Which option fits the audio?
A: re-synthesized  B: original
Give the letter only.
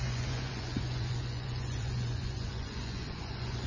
A